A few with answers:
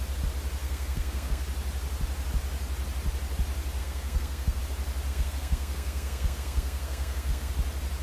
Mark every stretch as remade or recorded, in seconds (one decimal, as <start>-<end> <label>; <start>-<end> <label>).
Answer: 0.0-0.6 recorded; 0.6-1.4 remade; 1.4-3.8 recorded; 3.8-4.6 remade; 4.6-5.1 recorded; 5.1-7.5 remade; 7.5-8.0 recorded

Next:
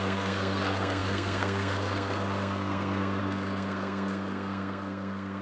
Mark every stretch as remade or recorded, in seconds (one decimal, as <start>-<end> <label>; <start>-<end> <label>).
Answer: 0.0-5.4 remade

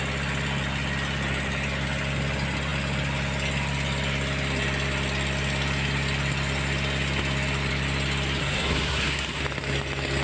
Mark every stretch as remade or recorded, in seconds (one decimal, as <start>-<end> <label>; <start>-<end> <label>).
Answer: 0.0-8.4 recorded; 8.4-9.4 remade; 9.4-10.2 recorded

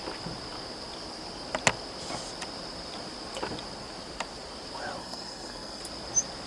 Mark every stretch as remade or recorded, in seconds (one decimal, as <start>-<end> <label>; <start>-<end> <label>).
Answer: 0.0-5.0 recorded; 5.0-5.8 remade; 5.8-6.5 recorded